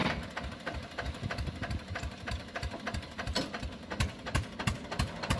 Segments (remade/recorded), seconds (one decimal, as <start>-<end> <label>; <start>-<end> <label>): 0.0-2.3 recorded; 2.3-5.4 remade

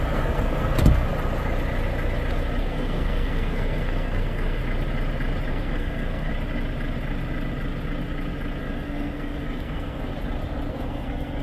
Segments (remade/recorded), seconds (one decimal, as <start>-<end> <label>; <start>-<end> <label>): 0.0-1.1 remade; 1.1-2.6 recorded; 2.6-4.6 remade; 4.6-5.5 recorded; 5.5-6.3 remade; 6.3-8.6 recorded; 8.6-10.1 remade; 10.1-10.7 recorded; 10.7-11.4 remade

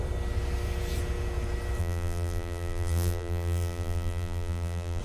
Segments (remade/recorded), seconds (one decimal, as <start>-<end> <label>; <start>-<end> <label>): 0.0-1.8 recorded; 1.8-5.0 remade

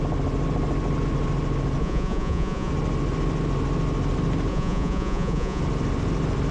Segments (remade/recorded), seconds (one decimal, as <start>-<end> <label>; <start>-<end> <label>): 0.0-1.8 recorded; 1.8-2.7 remade; 2.7-4.5 recorded; 4.5-5.6 remade; 5.6-6.5 recorded

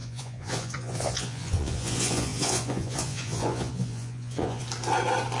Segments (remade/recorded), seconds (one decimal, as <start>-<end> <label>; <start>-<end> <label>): 0.0-4.6 remade; 4.6-5.4 recorded

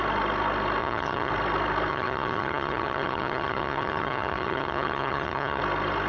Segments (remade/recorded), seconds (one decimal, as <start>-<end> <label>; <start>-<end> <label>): 0.0-0.8 recorded; 0.8-1.3 remade; 1.3-1.9 recorded; 1.9-5.6 remade; 5.6-6.1 recorded